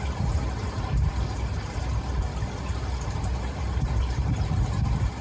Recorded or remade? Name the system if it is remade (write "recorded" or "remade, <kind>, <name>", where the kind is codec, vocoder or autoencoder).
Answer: recorded